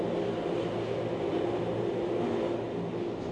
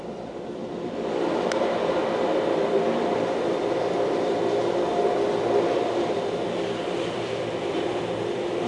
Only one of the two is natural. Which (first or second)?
first